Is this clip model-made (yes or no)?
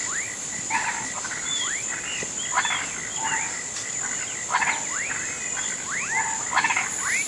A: no